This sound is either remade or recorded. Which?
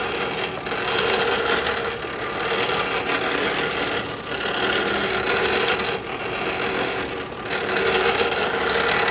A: recorded